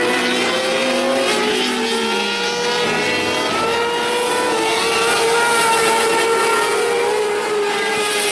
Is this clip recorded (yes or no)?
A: yes